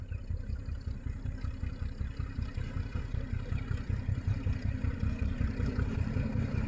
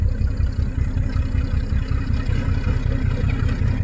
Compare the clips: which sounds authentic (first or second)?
second